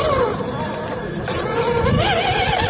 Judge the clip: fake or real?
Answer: real